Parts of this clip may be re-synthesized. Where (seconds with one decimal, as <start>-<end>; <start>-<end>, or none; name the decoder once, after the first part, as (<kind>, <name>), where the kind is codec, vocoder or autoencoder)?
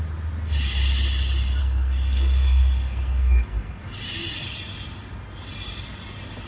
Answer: 1.6-3.8 (codec, SNAC)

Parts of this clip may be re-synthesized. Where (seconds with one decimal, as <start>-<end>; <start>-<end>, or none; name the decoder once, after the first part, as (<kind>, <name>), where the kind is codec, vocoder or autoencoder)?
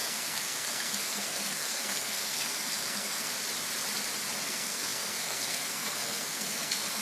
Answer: 0.0-3.3 (codec, SNAC); 4.4-7.0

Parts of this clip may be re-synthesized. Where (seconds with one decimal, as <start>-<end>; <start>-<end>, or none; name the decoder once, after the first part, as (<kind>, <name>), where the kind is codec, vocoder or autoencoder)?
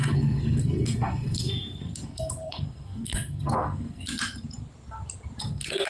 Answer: 0.0-4.1 (codec, SNAC); 5.4-5.9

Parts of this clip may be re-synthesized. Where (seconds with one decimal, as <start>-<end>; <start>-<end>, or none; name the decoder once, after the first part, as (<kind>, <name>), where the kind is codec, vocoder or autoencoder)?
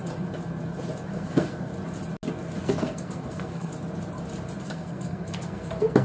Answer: 1.1-1.7 (codec, SNAC); 2.6-3.7; 4.6-6.0